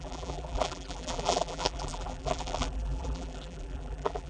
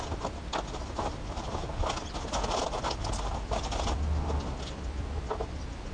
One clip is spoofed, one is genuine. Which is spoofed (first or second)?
first